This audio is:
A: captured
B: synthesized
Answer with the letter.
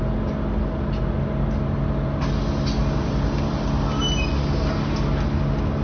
A